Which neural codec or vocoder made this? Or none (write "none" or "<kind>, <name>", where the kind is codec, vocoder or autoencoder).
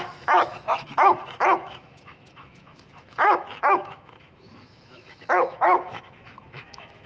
autoencoder, DAC-VAE